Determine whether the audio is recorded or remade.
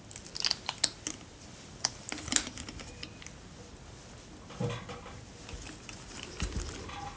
recorded